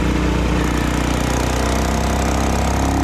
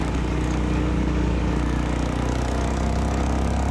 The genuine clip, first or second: first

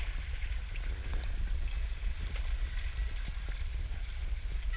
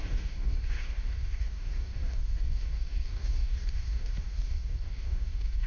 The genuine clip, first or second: first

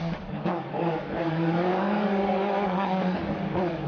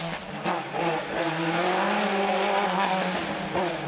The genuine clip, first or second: second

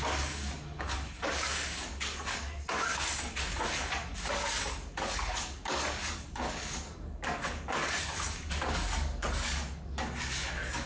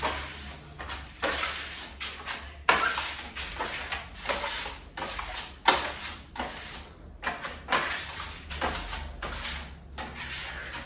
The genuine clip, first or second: second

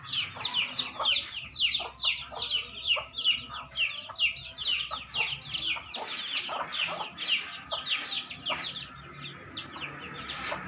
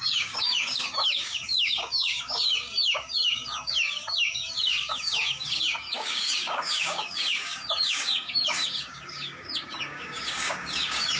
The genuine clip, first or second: first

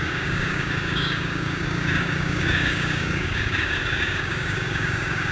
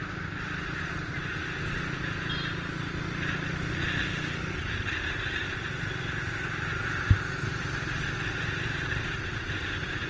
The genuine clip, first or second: second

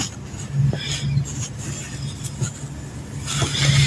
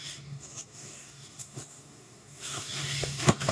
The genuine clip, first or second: first